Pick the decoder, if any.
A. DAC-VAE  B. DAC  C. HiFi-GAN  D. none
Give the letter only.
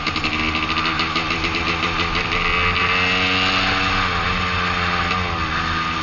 D